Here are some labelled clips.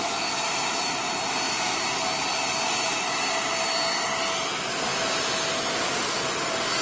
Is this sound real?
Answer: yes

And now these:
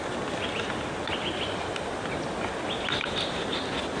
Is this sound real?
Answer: yes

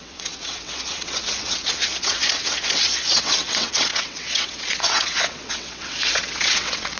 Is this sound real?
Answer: no